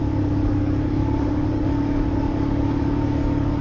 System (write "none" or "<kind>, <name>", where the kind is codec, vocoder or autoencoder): codec, DAC